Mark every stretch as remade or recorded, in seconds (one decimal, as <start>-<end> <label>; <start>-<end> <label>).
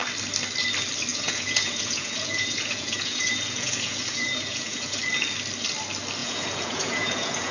0.0-1.1 recorded; 1.1-5.0 remade; 5.0-6.2 recorded; 6.2-7.5 remade